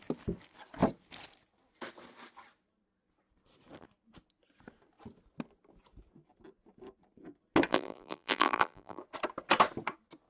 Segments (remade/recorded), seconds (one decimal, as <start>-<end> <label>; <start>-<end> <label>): 0.0-7.7 recorded; 7.7-9.0 remade; 9.0-10.3 recorded